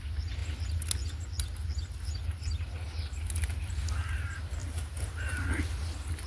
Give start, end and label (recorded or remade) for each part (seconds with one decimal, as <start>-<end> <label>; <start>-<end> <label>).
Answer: 0.0-4.6 recorded; 4.6-5.2 remade; 5.2-6.3 recorded